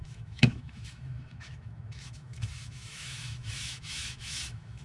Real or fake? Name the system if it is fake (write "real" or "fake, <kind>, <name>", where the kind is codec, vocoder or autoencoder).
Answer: fake, autoencoder, DAC-VAE